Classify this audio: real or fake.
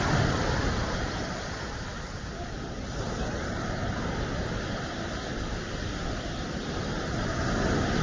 real